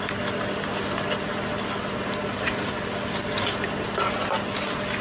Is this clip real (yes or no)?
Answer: yes